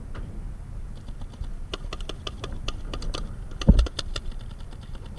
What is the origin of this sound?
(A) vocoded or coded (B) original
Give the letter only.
B